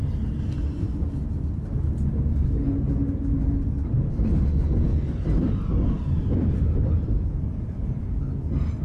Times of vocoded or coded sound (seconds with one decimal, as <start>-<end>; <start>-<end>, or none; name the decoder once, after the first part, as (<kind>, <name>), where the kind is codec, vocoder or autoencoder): 4.9-8.2 (vocoder, BigVGAN v2)